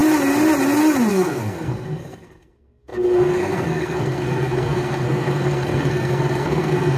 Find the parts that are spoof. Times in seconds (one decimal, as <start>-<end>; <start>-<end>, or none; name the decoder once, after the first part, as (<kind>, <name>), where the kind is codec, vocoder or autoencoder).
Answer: 1.1-7.0 (codec, SNAC)